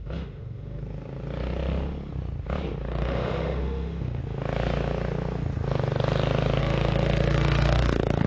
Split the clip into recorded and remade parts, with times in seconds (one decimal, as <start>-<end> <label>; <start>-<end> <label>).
0.0-0.8 remade; 0.8-2.9 recorded; 2.9-4.2 remade; 4.2-6.6 recorded; 6.6-8.3 remade